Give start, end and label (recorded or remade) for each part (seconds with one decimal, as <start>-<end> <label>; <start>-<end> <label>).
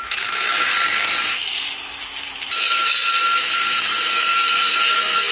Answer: 0.0-0.7 remade; 0.7-1.3 recorded; 1.3-5.3 remade